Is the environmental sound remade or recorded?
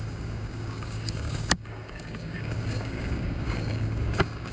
remade